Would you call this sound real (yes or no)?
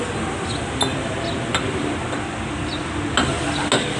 yes